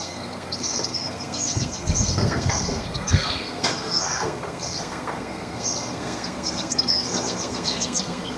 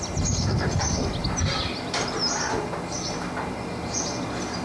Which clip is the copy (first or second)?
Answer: first